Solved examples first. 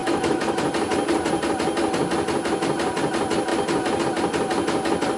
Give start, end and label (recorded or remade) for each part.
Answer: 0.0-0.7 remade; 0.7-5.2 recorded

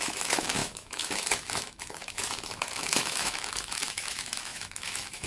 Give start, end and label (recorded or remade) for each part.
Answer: 0.0-5.3 remade

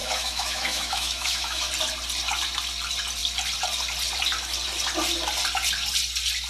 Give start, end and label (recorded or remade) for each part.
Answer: 0.0-1.7 remade; 1.7-6.5 recorded

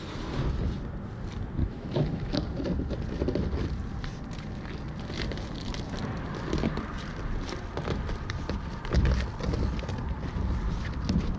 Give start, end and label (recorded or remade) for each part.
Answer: 0.0-1.6 recorded; 1.6-2.4 remade; 2.4-11.4 recorded

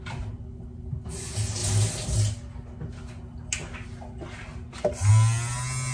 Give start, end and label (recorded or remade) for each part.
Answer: 0.0-5.9 recorded